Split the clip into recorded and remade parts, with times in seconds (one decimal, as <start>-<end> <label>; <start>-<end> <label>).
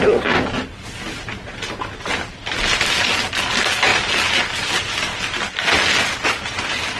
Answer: 0.0-7.0 recorded